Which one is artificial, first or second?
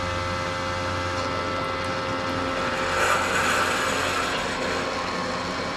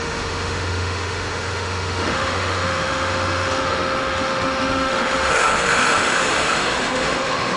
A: second